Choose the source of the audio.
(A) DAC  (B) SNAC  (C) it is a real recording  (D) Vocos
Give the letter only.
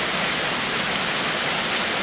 C